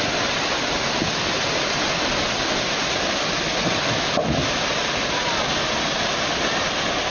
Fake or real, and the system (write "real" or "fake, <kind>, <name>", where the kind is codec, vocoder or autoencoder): real